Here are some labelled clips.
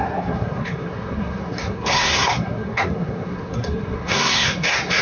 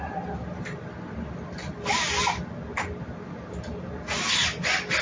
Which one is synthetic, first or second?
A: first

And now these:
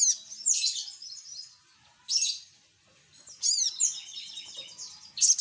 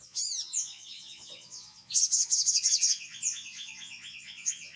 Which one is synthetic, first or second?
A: second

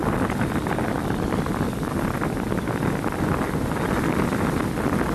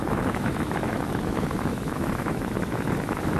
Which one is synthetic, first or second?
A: second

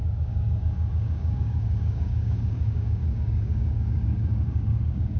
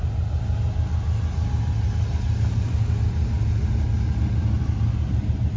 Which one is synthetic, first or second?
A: first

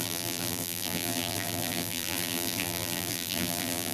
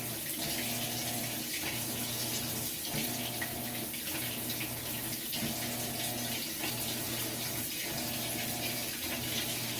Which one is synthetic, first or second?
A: first